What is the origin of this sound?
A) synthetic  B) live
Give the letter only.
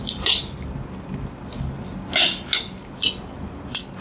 B